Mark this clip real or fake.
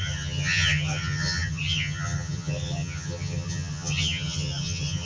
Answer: fake